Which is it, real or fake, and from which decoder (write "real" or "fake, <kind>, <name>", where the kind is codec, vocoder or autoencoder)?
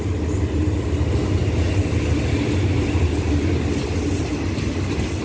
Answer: real